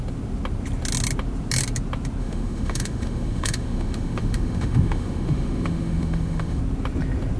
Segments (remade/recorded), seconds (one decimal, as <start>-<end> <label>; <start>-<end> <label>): 0.0-2.2 recorded; 2.2-6.6 remade; 6.6-7.4 recorded